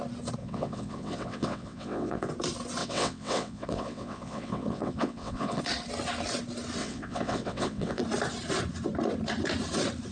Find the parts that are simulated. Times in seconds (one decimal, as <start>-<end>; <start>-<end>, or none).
0.4-2.3; 2.8-5.6; 6.8-8.0

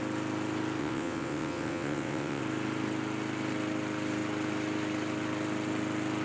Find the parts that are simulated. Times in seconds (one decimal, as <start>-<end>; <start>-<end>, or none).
0.8-2.4

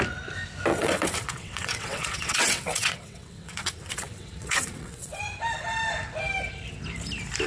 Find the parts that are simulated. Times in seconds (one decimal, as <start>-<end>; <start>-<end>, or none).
0.7-5.2

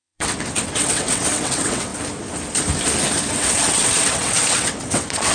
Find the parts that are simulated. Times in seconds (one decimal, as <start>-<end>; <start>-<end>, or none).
0.0-1.9; 3.3-5.3

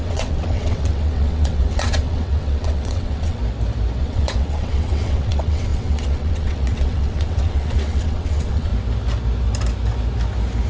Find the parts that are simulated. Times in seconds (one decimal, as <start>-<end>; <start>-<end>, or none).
0.0-3.4; 4.0-8.7

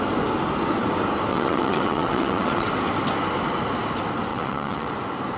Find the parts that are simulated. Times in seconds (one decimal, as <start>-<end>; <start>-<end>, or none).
1.3-2.7; 4.3-4.9